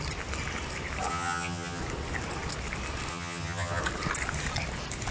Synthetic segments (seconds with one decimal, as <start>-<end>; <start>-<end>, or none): 1.1-1.8; 3.1-3.8